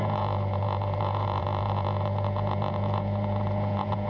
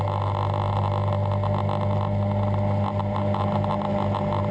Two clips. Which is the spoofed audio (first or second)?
first